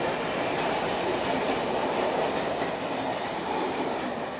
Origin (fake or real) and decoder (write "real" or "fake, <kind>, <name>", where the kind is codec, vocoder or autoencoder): real